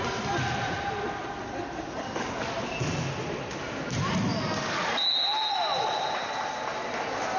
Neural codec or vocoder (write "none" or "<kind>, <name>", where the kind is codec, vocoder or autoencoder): none